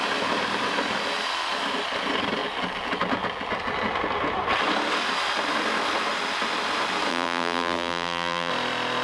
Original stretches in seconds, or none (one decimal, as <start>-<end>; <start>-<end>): 0.0-7.1; 8.5-9.0